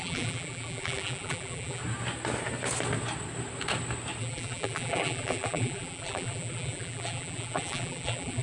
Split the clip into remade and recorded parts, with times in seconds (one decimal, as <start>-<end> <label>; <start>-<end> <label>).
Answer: 0.0-1.8 remade; 1.8-4.2 recorded; 4.2-8.4 remade